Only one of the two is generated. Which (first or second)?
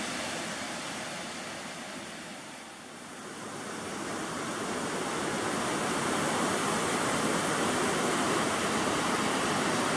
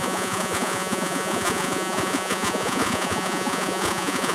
second